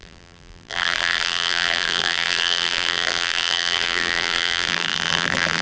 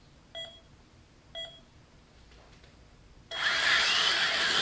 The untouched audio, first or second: second